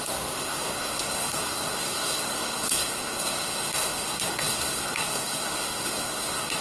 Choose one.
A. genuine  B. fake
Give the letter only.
B